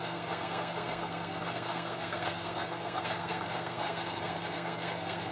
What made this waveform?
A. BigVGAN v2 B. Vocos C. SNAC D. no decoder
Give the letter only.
C